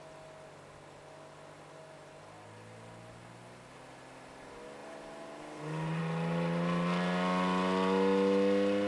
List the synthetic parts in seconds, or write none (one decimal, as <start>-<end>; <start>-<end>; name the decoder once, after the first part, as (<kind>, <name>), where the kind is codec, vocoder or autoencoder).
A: none